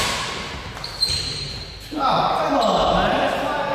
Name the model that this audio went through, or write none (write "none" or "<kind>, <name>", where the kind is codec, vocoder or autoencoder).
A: vocoder, BigVGAN v2